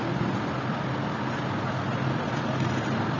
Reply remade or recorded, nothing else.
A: recorded